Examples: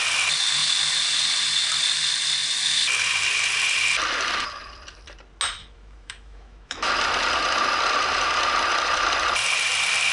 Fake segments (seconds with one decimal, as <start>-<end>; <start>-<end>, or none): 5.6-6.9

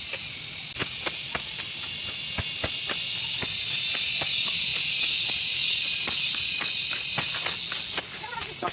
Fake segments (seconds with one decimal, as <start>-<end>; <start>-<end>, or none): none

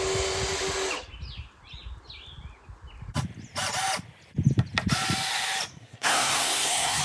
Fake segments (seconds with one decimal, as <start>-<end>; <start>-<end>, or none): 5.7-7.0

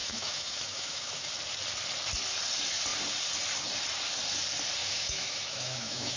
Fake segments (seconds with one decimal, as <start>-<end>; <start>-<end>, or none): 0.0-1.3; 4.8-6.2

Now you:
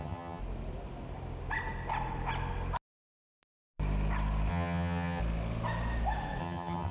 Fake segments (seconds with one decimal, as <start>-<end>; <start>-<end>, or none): 0.0-0.4; 4.5-5.2; 6.4-6.9

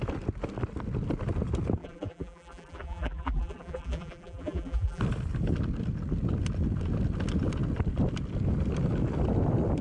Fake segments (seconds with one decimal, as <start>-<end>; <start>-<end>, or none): 1.8-5.0

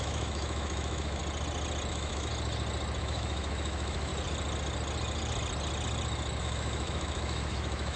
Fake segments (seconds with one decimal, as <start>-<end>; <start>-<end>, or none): 0.0-1.2; 1.9-2.3; 3.0-4.1; 6.4-8.0

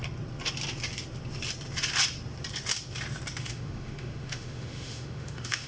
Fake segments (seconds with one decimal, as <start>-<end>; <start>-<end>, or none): 3.4-5.7